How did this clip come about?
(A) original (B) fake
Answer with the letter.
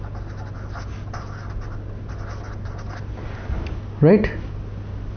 A